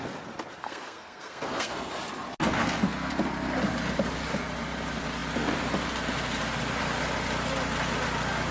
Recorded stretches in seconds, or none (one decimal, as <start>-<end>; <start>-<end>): 0.0-0.6; 1.9-2.4; 3.1-8.5